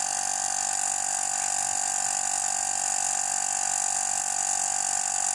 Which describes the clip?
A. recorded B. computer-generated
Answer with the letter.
A